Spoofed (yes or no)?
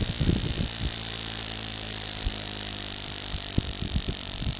no